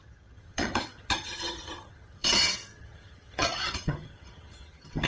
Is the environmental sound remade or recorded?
remade